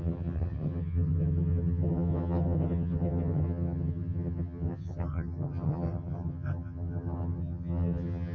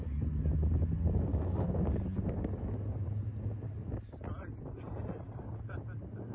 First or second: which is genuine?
second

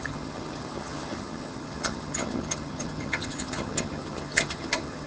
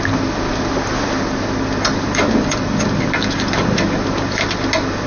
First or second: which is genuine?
second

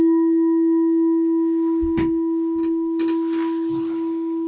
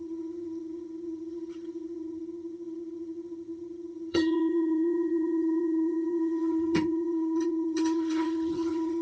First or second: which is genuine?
first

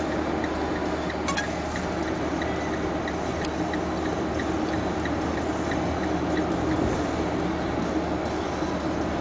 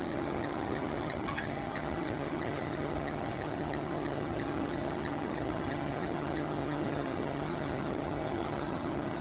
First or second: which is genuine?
first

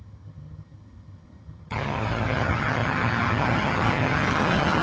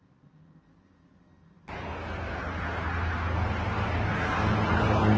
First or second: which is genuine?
second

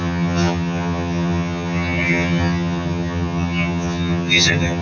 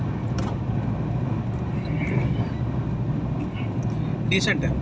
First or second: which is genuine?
second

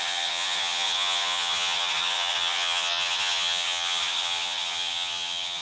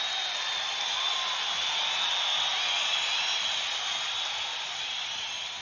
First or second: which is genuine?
second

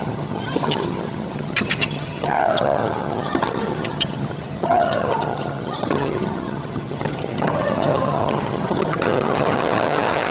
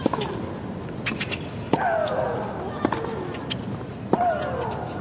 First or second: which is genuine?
second